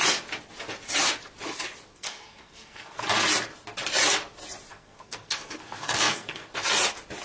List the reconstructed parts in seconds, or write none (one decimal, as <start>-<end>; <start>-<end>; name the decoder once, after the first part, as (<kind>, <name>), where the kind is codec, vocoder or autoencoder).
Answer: 1.9-3.0 (codec, SNAC); 4.7-6.5